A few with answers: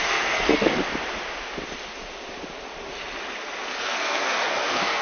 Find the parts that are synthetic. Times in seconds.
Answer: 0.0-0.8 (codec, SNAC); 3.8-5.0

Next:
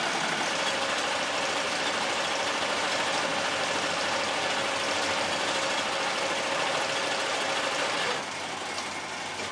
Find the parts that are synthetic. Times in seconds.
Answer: none

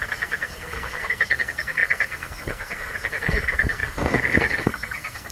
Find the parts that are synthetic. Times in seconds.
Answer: 0.0-5.3 (codec, SNAC)

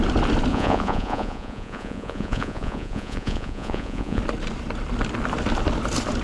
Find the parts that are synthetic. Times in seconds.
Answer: 0.5-4.2 (vocoder, Vocos)

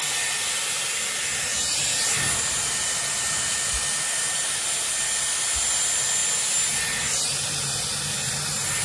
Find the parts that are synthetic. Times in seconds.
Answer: none

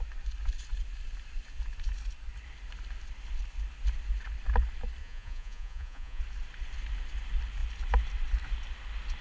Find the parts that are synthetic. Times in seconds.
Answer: 5.0-6.2 (vocoder, Vocos)

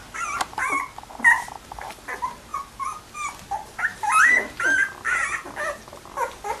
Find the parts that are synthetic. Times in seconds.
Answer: 0.0-0.6 (vocoder, BigVGAN v2); 1.2-2.5

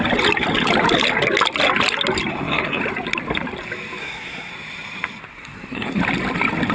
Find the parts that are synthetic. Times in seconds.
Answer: 2.3-2.8 (codec, SNAC); 4.0-4.5; 5.3-6.0